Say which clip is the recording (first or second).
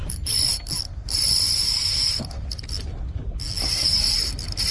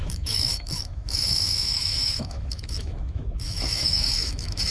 first